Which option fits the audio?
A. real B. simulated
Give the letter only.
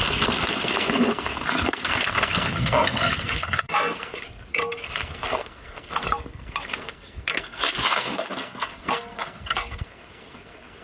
B